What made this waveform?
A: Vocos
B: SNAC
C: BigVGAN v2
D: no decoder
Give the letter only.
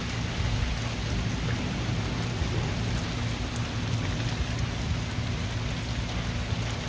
D